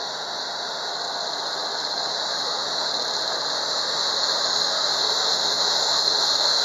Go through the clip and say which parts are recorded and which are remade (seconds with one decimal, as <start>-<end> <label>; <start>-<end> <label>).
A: 0.0-0.9 remade; 0.9-2.1 recorded; 2.1-2.9 remade; 2.9-3.5 recorded; 3.5-6.6 remade